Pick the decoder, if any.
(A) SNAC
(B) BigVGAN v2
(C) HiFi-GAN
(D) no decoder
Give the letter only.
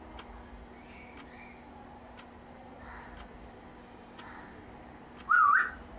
D